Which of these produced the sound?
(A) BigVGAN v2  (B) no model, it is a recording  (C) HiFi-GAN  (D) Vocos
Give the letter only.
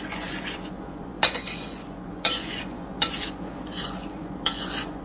D